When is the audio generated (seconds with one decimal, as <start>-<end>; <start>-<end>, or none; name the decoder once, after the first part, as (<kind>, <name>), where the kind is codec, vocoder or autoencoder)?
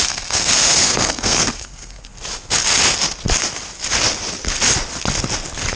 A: 0.0-2.1 (codec, SNAC)